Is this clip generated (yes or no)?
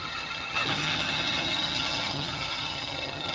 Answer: yes